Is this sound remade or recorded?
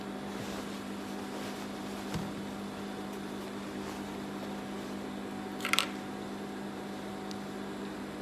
recorded